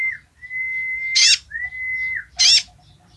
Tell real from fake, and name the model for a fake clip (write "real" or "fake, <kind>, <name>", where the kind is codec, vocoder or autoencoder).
real